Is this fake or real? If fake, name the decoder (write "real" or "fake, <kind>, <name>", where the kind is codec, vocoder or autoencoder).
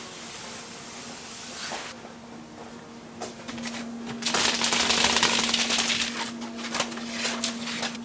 real